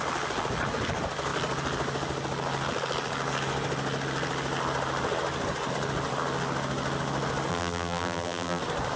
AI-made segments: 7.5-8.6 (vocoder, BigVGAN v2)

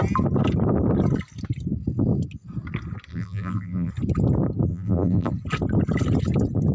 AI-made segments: 3.1-3.9 (vocoder, BigVGAN v2); 4.7-5.3